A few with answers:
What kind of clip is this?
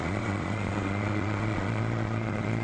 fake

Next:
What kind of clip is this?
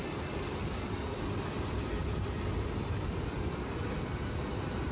fake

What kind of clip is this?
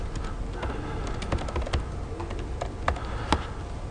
real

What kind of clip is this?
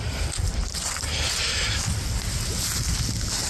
real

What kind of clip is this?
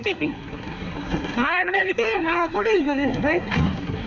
fake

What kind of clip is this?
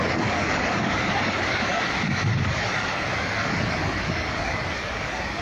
fake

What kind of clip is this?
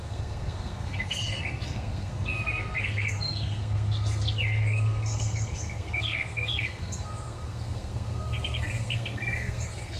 fake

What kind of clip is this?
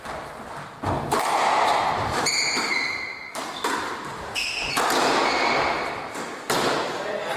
real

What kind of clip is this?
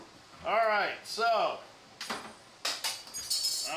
real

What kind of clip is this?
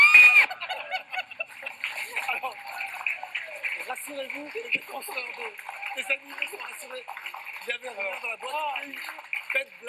real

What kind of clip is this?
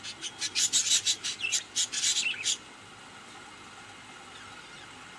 real